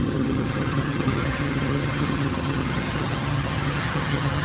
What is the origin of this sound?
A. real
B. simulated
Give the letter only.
B